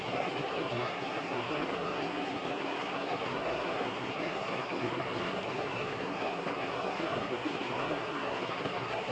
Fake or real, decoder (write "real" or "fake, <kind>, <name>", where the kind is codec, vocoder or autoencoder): fake, codec, SNAC